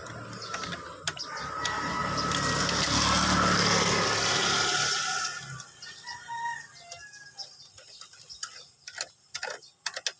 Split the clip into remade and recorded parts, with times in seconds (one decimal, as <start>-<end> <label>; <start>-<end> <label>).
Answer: 0.0-10.2 recorded